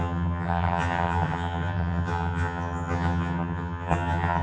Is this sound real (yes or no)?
no